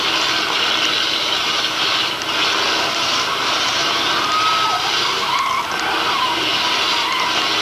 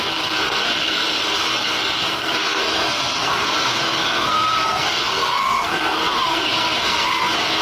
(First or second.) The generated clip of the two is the second